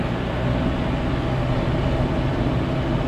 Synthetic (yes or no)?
no